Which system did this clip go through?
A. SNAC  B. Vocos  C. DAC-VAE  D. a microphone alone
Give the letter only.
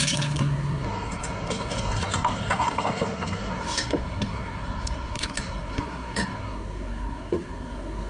A